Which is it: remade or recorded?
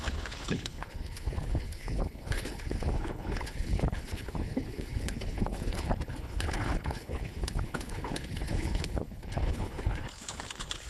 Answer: remade